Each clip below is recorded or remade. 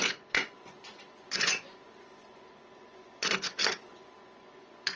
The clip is remade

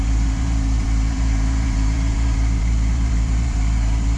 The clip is remade